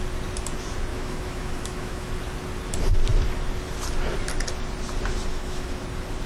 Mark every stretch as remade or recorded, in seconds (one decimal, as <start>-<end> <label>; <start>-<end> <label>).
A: 0.0-0.9 recorded; 0.9-2.1 remade; 2.1-5.3 recorded; 5.3-5.8 remade; 5.8-6.3 recorded